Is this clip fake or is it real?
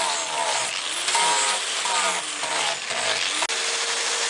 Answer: real